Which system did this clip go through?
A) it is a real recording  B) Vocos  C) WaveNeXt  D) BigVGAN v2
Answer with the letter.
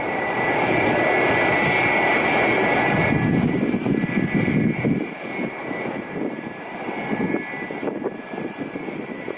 A